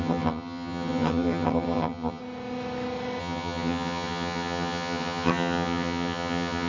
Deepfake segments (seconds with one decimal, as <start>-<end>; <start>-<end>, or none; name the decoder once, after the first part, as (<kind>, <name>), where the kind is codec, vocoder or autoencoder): 0.0-2.2 (vocoder, HiFi-GAN); 3.2-6.7